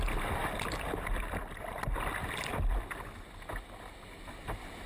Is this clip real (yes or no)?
yes